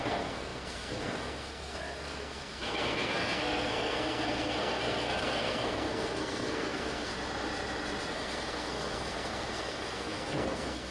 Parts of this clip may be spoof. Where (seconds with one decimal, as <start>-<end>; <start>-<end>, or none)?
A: 0.0-7.1; 8.1-10.9